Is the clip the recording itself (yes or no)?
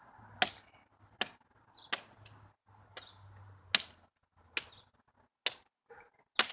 yes